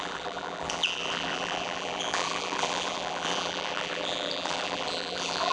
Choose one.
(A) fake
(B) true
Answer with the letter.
A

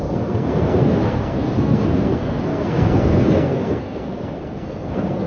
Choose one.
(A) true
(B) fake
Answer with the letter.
B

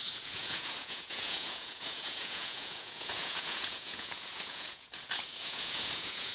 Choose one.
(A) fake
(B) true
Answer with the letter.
A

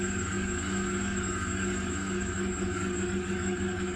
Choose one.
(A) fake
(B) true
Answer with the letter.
A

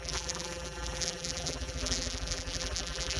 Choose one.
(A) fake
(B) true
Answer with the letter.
A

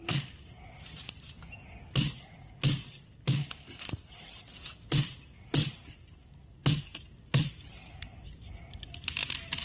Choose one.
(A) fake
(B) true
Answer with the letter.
B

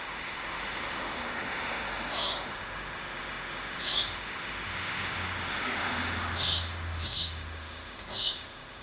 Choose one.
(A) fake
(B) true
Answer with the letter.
A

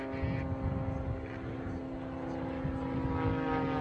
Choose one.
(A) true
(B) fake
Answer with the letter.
A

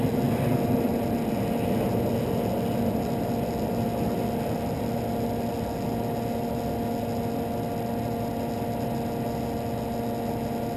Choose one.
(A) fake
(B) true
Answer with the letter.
B